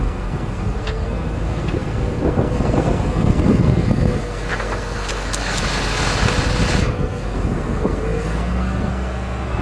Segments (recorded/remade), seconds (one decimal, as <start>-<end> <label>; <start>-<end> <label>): 0.0-5.6 remade; 5.6-6.8 recorded; 6.8-9.6 remade